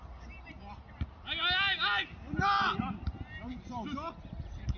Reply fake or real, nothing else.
real